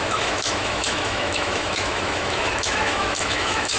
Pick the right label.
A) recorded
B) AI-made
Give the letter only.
B